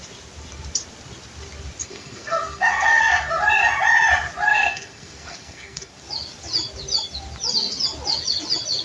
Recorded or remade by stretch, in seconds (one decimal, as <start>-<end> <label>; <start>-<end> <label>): 0.0-1.8 recorded; 1.8-3.3 remade; 3.3-4.5 recorded; 4.5-5.9 remade; 5.9-8.8 recorded